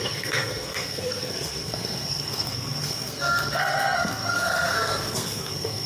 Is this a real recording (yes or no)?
no